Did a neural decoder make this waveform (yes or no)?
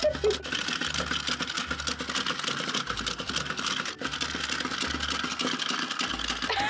no